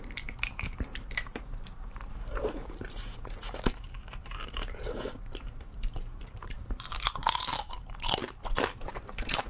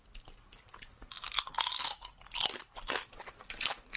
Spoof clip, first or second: first